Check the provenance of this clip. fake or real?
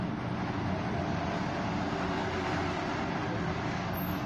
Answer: real